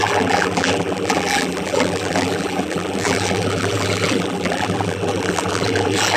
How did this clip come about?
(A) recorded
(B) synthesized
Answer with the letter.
B